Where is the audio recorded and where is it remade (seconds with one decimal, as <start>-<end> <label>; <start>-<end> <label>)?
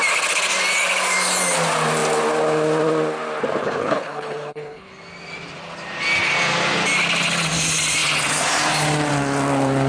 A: 0.0-3.6 recorded; 3.6-4.9 remade; 4.9-9.9 recorded